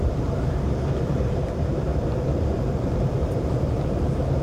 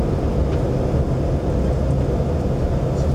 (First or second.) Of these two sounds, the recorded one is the second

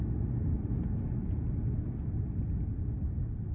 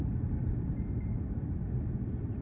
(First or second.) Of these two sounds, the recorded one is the first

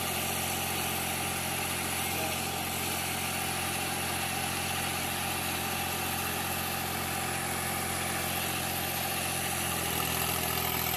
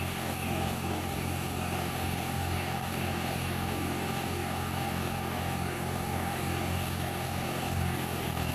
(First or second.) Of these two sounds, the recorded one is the first